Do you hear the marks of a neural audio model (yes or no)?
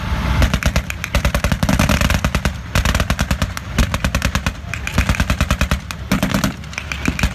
no